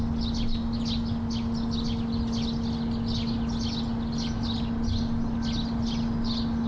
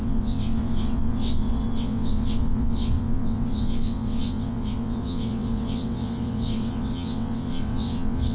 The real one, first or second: first